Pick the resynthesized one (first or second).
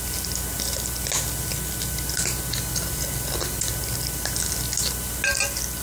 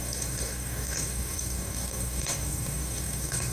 second